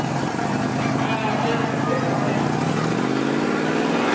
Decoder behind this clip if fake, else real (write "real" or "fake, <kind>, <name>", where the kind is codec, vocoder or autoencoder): real